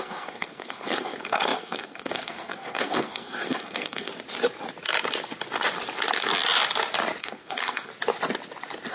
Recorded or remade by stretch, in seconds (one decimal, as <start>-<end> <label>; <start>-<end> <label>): 0.0-4.1 remade; 4.1-7.2 recorded; 7.2-7.9 remade; 7.9-8.9 recorded